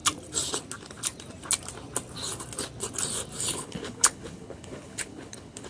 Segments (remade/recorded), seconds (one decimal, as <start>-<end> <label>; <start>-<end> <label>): 0.0-3.4 recorded; 3.4-5.7 remade